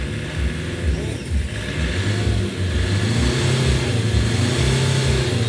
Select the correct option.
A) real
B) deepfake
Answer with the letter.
A